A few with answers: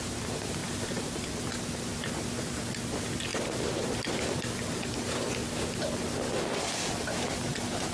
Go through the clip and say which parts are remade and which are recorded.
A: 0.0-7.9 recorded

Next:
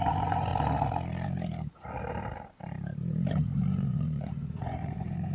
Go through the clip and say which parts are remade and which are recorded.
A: 0.0-0.5 remade; 0.5-3.7 recorded; 3.7-5.3 remade